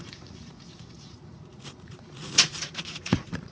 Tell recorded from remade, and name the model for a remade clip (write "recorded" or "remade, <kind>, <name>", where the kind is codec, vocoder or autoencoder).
remade, vocoder, Vocos